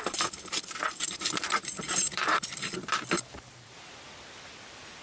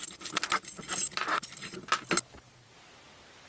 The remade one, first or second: first